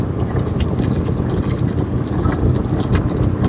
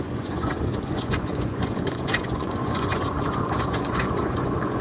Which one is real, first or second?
first